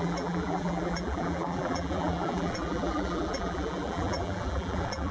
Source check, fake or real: fake